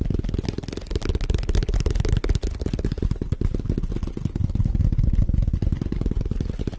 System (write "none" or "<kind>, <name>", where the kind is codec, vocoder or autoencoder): none